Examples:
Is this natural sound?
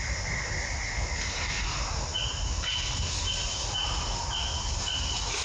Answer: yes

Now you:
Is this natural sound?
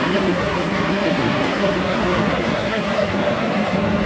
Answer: no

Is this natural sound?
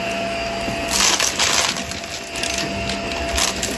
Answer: yes